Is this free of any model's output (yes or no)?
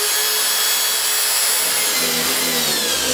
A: yes